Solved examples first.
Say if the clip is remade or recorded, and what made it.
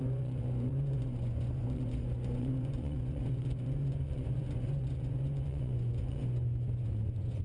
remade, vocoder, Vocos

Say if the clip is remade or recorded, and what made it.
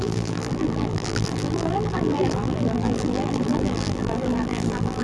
remade, vocoder, BigVGAN v2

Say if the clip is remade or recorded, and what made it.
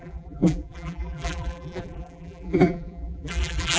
remade, vocoder, BigVGAN v2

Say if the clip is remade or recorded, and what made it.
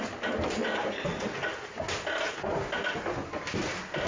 recorded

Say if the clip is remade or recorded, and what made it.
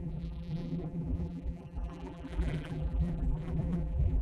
remade, vocoder, BigVGAN v2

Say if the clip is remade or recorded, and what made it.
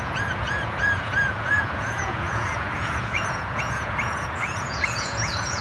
remade, vocoder, Vocos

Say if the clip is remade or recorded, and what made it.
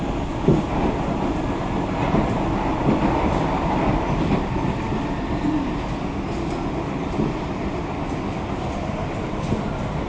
recorded